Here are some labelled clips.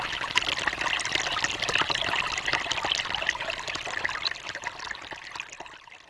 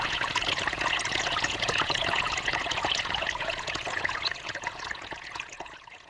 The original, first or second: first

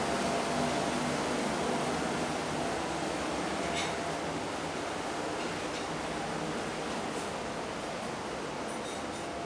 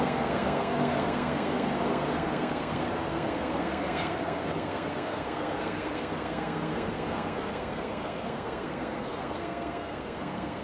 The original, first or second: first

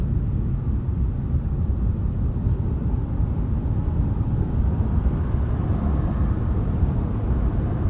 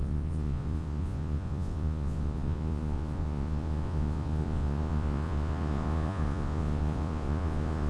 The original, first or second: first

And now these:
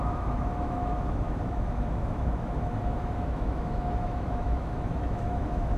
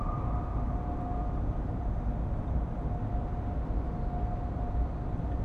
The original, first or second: second